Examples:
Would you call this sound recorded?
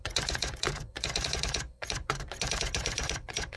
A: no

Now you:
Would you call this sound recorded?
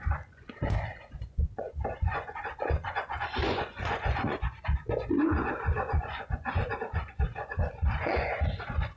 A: no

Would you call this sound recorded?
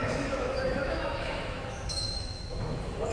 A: no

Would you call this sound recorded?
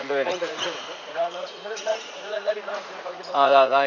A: no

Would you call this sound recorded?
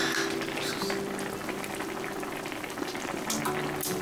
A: yes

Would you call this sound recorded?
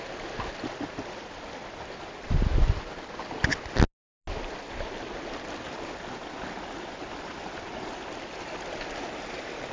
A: yes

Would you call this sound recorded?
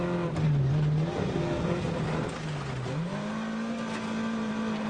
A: yes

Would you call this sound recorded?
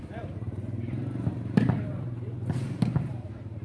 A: no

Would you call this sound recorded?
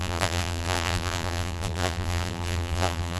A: no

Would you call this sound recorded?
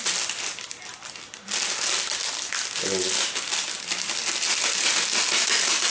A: yes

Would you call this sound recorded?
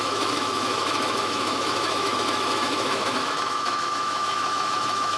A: no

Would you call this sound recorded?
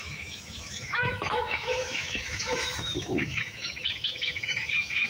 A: no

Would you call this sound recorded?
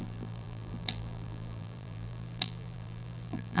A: no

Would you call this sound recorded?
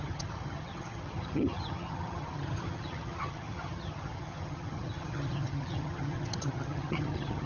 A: no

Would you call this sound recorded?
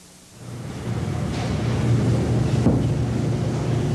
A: yes